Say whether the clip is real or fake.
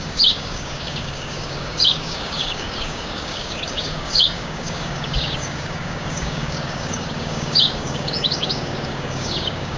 fake